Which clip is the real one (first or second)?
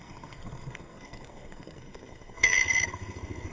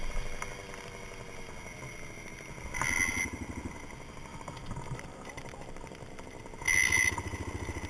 second